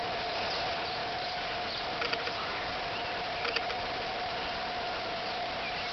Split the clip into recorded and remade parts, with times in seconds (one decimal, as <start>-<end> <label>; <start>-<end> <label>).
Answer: 0.0-0.5 remade; 0.5-1.0 recorded; 1.0-4.5 remade; 4.5-5.9 recorded